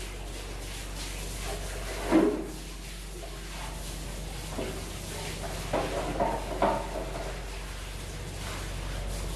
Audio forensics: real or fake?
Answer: real